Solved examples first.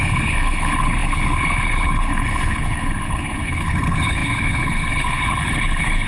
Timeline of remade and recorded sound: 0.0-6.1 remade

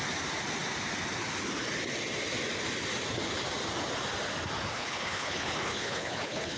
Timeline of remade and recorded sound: 0.0-4.7 recorded; 4.7-6.6 remade

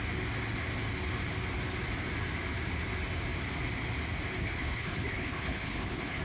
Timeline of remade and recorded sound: 0.0-4.4 recorded; 4.4-6.2 remade